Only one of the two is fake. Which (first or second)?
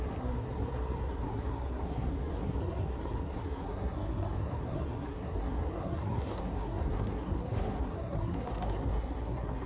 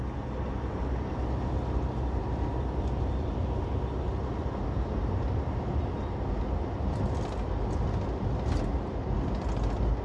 first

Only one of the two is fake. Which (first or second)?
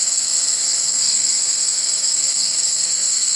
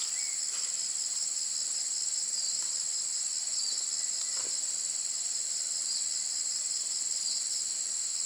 first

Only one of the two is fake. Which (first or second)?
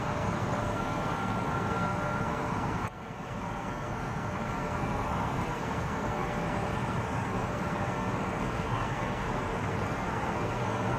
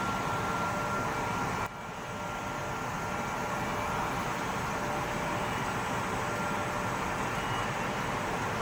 first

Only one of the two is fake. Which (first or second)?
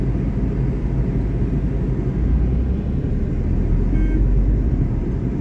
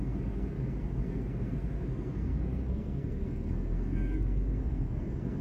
second